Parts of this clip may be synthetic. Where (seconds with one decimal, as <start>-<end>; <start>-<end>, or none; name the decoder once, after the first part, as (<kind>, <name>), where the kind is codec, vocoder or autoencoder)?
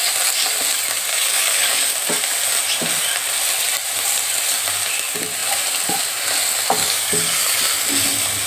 1.1-1.9 (codec, DAC); 6.8-7.6